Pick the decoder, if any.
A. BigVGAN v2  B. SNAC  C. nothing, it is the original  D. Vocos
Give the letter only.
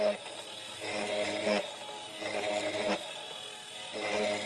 C